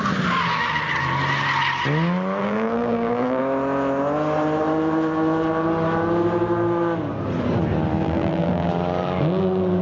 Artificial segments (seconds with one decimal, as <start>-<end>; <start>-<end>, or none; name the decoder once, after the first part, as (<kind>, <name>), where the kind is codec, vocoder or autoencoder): 2.4-3.4 (vocoder, BigVGAN v2); 8.0-8.7